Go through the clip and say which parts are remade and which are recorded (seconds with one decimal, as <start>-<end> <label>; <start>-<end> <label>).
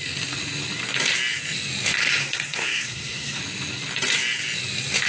0.0-2.2 recorded; 2.2-3.4 remade; 3.4-5.1 recorded